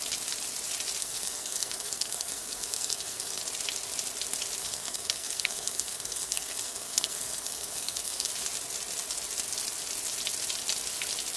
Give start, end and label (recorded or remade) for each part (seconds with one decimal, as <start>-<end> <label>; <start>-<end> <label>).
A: 0.0-1.0 recorded; 1.0-3.4 remade; 3.4-4.6 recorded; 4.6-8.3 remade; 8.3-11.4 recorded